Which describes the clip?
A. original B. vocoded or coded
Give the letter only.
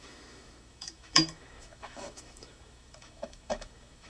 B